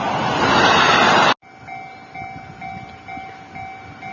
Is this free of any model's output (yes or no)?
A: yes